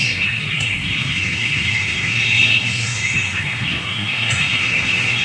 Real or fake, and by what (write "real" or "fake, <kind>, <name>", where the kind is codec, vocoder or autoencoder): fake, codec, SNAC